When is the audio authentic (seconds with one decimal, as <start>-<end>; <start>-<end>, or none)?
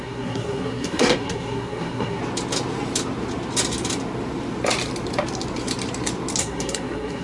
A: 2.2-6.4